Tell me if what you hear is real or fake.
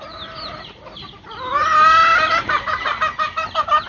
real